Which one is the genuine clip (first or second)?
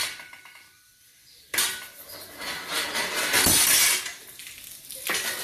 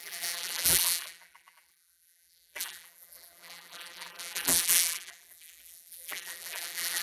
first